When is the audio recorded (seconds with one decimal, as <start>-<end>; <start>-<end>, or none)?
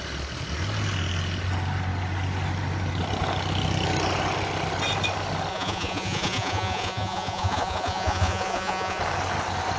0.0-5.5; 9.0-9.8